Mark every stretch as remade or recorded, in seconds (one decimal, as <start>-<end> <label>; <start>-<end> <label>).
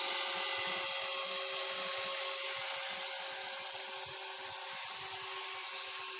0.0-6.2 recorded